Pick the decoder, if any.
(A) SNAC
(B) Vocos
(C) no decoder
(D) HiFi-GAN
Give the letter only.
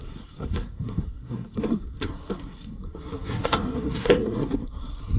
A